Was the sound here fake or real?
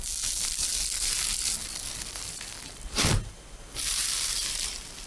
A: real